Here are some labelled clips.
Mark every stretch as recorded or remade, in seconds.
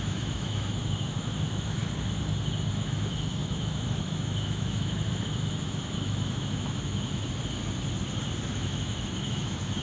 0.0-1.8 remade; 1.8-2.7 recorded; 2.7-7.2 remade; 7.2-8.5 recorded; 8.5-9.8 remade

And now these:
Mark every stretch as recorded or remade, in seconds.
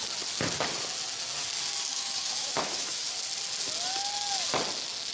0.0-1.9 recorded; 1.9-3.1 remade; 3.1-5.1 recorded